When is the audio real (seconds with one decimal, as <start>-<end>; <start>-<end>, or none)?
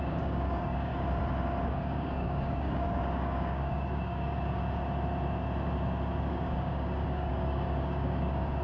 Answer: 0.9-1.6; 4.6-6.2